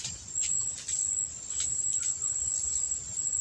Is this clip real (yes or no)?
yes